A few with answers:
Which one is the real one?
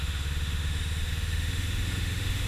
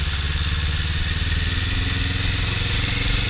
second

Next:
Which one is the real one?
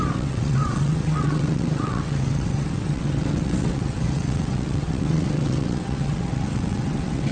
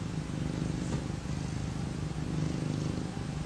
second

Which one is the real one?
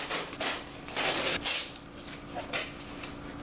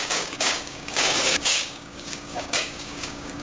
first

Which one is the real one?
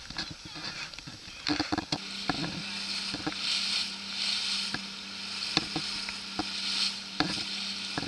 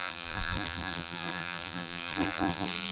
first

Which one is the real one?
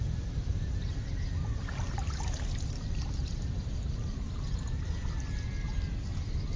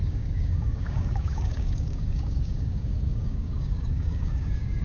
first